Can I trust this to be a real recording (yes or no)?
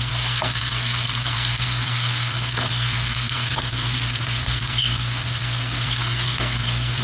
no